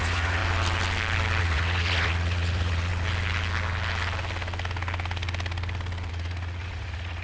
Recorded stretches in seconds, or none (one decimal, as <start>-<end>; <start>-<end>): 0.4-1.4; 2.9-6.1